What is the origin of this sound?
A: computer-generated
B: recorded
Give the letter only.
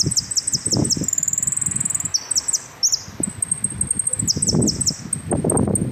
B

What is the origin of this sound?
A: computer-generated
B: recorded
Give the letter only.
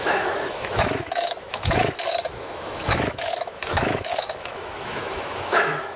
A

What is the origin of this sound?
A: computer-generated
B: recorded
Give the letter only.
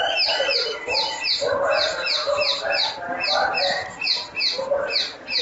B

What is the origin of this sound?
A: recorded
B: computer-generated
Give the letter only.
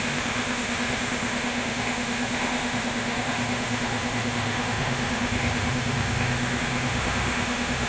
B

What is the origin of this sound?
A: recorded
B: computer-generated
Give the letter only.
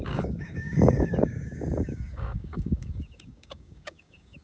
B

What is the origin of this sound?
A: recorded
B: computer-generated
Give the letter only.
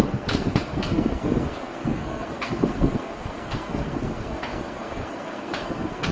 B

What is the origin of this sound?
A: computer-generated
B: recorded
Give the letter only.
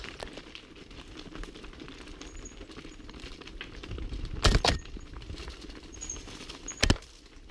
B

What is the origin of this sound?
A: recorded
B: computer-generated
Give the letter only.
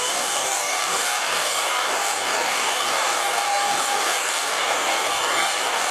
B